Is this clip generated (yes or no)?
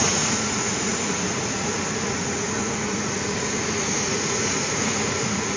yes